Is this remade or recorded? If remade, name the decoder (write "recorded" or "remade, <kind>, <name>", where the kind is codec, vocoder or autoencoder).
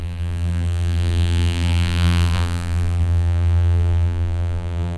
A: remade, vocoder, BigVGAN v2